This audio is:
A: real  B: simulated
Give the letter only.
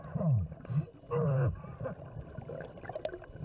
A